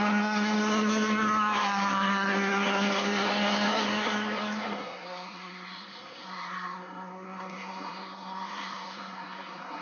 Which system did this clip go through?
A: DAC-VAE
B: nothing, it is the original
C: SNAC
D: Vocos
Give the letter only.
C